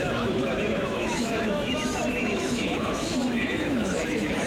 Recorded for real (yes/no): no